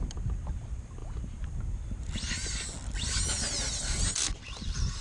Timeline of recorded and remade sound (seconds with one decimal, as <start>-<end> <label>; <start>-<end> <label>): 0.0-5.0 recorded